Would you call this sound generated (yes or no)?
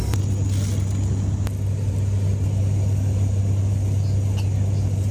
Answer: no